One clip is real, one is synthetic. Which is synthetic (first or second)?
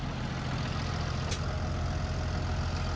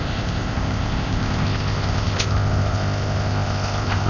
second